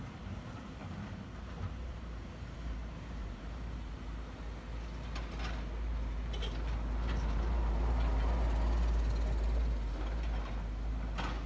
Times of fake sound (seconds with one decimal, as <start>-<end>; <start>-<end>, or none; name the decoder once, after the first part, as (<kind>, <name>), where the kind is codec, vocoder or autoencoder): 0.8-4.4 (vocoder, BigVGAN v2)